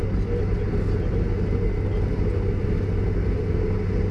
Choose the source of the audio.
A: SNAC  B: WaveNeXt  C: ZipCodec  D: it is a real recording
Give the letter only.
D